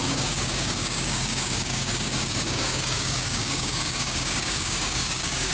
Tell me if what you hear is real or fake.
fake